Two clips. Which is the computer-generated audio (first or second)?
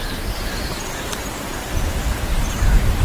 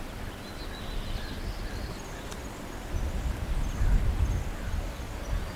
first